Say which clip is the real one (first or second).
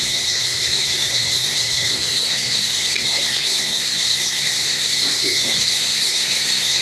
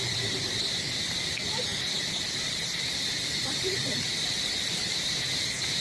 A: second